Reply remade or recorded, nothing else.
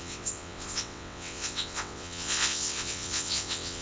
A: remade